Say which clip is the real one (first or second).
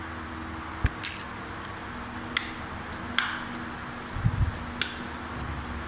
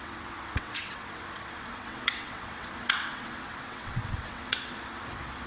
first